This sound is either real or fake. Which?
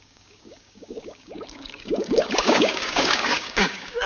fake